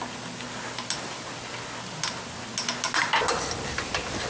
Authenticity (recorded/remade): recorded